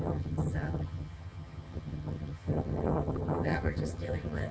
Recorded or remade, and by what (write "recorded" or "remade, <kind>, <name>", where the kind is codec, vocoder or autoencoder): remade, vocoder, HiFi-GAN